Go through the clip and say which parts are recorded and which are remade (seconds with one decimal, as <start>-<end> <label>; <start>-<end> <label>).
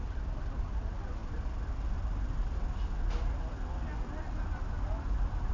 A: 0.0-5.5 recorded